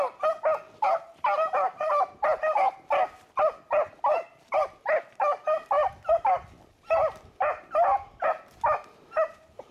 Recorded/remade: recorded